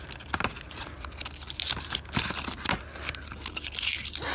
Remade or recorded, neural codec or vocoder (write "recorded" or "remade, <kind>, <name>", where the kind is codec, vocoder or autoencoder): recorded